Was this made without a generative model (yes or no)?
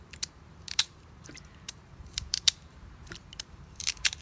no